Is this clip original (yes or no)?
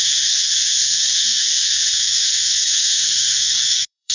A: no